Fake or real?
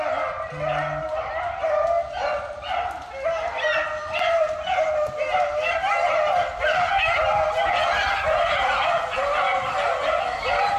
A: real